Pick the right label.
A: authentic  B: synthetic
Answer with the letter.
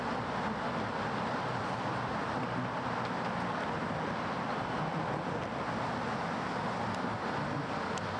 A